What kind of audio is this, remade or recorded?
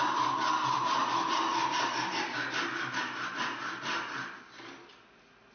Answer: recorded